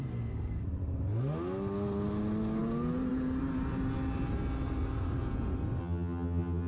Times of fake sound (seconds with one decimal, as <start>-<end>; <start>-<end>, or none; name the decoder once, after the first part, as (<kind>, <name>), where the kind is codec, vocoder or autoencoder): 5.8-6.7 (vocoder, HiFi-GAN)